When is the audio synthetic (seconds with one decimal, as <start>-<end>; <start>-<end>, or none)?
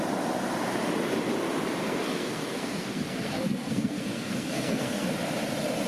1.8-5.1